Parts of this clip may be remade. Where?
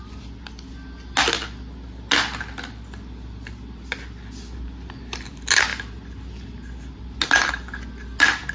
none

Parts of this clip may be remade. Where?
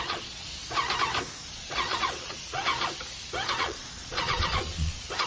0.0-0.6 (vocoder, Vocos); 1.5-2.7; 3.6-5.3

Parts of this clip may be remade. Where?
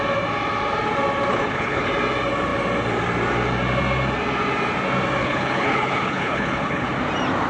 1.3-1.9 (codec, HILCodec); 5.2-6.9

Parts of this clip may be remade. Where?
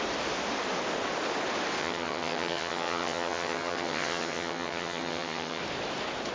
1.8-5.6 (vocoder, HiFi-GAN)